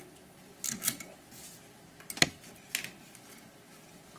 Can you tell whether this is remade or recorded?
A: recorded